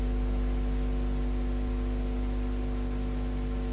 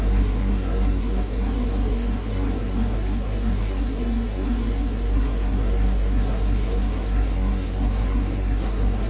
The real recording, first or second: first